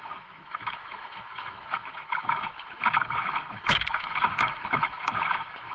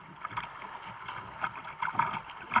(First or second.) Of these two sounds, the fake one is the first